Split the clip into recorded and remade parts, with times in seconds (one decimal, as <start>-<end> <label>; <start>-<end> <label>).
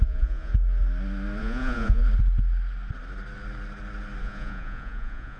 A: 0.0-0.5 remade; 0.5-1.4 recorded; 1.4-2.0 remade; 2.0-4.2 recorded; 4.2-5.4 remade